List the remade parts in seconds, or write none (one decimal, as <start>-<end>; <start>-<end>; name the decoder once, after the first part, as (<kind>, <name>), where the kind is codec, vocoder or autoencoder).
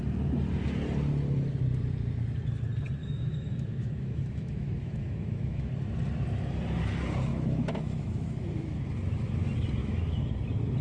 3.0-5.7 (autoencoder, DAC-VAE); 7.3-8.8; 9.8-10.3